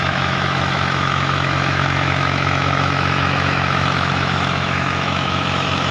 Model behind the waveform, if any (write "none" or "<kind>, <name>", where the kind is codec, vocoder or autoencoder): autoencoder, DAC-VAE